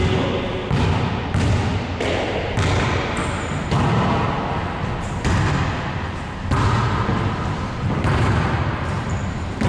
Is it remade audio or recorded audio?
recorded